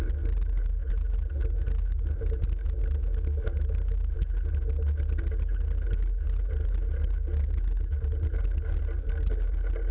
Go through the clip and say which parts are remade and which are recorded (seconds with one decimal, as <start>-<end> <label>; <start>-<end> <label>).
0.0-9.9 recorded